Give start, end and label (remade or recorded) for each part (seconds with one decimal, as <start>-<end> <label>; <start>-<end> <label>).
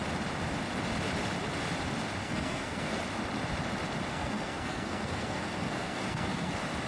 0.0-2.2 recorded; 2.2-3.0 remade; 3.0-4.1 recorded; 4.1-6.5 remade; 6.5-6.9 recorded